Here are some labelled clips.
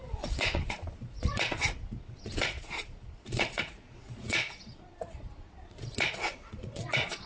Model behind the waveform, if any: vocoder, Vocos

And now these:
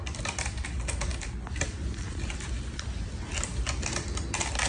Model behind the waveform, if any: none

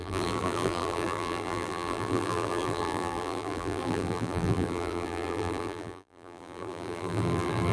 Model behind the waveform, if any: vocoder, BigVGAN v2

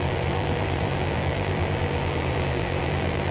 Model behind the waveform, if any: vocoder, BigVGAN v2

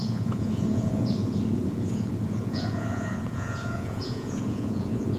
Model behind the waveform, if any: vocoder, Vocos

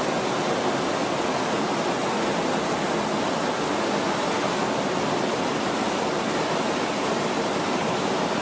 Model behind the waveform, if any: none